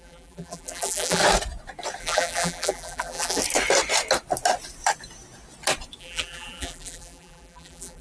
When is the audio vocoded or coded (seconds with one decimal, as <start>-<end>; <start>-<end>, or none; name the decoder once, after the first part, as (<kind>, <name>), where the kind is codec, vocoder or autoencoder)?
0.0-1.2 (vocoder, BigVGAN v2); 2.0-3.4; 6.0-8.0

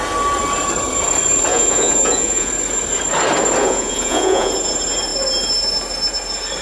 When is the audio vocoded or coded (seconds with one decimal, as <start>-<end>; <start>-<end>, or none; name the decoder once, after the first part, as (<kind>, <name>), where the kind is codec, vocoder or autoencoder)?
1.5-2.5 (vocoder, Vocos); 3.6-4.5